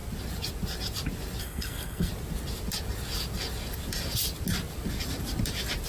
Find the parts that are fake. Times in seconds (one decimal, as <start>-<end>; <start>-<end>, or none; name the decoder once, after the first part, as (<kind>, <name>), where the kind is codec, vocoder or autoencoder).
1.4-2.1 (codec, SNAC)